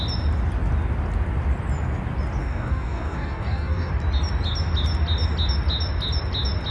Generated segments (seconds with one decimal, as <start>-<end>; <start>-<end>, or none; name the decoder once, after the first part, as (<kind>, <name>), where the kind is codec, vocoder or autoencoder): 2.4-3.9 (codec, DAC)

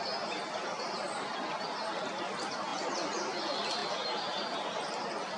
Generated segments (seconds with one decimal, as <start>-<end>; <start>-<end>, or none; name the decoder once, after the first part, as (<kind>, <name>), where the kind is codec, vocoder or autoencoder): none

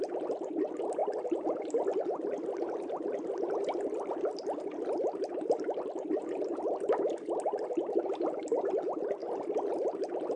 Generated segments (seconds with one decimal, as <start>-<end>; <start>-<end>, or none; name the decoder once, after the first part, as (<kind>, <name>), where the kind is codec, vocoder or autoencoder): none

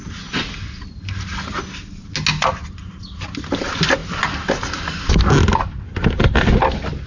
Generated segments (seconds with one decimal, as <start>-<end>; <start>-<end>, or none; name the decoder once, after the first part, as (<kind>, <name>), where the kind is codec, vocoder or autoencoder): none

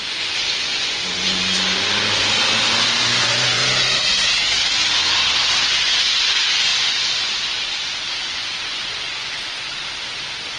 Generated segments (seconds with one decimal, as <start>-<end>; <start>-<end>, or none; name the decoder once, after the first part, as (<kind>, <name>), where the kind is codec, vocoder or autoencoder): 0.0-2.4 (vocoder, Vocos); 3.2-3.6; 5.7-9.7

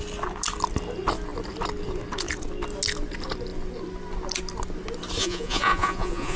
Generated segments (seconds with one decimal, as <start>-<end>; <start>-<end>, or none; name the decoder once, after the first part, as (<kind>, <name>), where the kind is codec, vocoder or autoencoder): 5.2-6.4 (vocoder, Vocos)